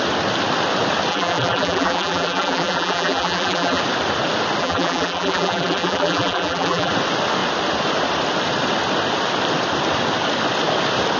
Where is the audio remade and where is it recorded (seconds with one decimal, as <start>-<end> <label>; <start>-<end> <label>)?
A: 0.0-1.1 recorded; 1.1-3.8 remade; 3.8-4.6 recorded; 4.6-6.9 remade; 6.9-11.2 recorded